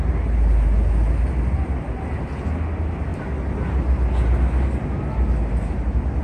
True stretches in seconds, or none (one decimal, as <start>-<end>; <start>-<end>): 0.0-6.2